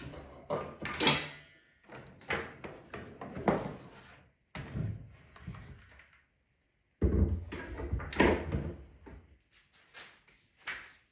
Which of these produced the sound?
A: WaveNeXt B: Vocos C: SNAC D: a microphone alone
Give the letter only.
D